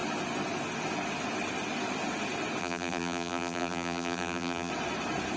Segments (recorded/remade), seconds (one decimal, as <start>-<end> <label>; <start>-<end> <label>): 0.0-2.6 recorded; 2.6-4.7 remade; 4.7-5.4 recorded